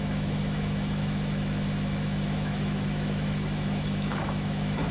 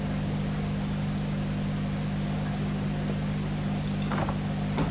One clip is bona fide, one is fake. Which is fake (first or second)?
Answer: first